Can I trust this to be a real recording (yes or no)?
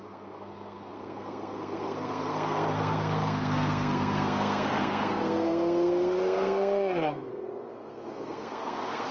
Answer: no